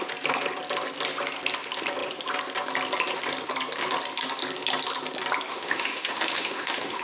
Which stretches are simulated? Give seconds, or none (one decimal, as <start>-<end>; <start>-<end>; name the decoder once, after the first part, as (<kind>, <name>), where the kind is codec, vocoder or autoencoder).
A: 5.5-7.0 (autoencoder, DAC-VAE)